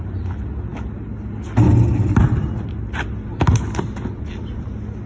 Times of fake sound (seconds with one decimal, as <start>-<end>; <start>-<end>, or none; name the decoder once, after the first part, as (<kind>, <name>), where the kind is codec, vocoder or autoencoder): none

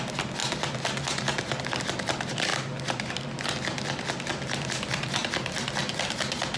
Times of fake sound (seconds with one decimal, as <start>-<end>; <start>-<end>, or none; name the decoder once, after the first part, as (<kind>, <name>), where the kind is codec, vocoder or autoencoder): none

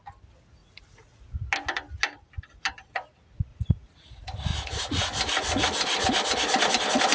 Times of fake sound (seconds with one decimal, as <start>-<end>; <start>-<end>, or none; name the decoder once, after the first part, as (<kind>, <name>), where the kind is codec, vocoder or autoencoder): 0.6-1.4 (vocoder, Vocos); 3.5-4.1; 4.5-5.2

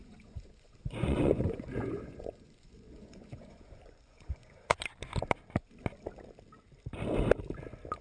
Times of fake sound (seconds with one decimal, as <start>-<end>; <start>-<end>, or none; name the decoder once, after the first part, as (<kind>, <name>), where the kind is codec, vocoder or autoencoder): 0.0-4.8 (vocoder, Vocos)

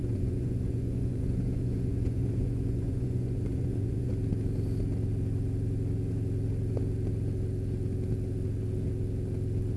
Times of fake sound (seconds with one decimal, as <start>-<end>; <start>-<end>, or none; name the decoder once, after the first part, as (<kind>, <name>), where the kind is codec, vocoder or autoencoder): 0.0-4.1 (vocoder, Vocos)

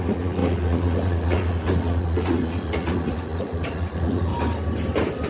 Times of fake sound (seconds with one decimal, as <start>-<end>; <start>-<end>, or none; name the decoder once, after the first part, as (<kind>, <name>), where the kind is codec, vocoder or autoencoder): 0.0-4.3 (vocoder, Vocos)